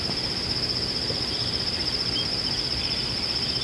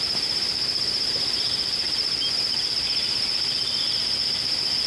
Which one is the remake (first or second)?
second